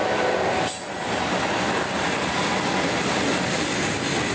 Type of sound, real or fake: real